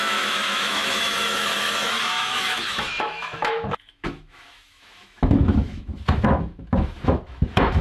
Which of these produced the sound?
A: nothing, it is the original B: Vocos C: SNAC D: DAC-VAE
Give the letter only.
D